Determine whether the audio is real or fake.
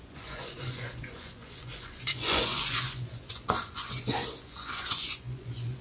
fake